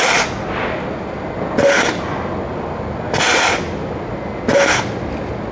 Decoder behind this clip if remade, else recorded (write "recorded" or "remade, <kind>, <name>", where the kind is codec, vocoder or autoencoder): recorded